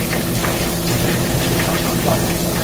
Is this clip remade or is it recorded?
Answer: recorded